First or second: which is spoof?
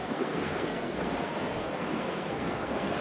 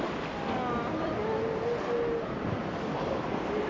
first